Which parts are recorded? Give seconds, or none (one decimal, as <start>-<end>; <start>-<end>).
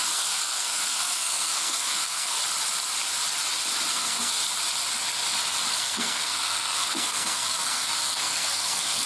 2.4-3.9; 4.4-5.7